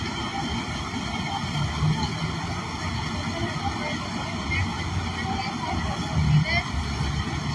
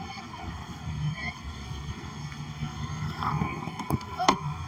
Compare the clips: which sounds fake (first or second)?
second